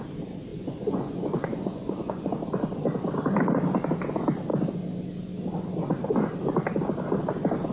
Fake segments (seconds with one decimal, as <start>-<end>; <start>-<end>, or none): 0.5-2.4